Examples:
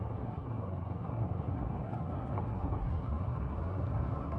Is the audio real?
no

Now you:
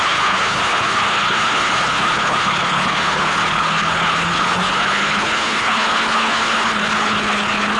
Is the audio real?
no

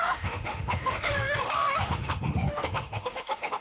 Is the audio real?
no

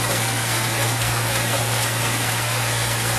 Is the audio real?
no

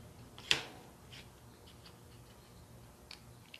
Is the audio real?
yes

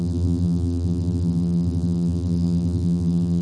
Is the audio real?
no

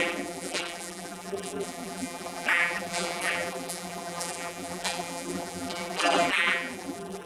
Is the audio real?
no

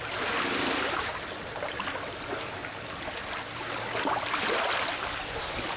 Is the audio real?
yes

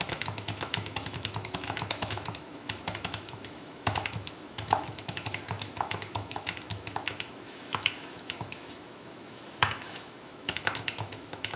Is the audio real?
no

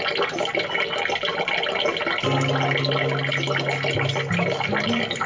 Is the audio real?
yes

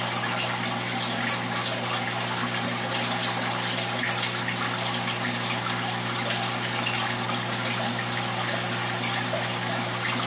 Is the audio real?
yes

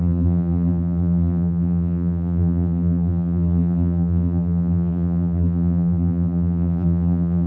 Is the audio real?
no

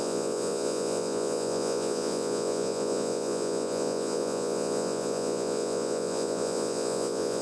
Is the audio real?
no